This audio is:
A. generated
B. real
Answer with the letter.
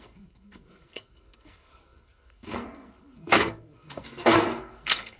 A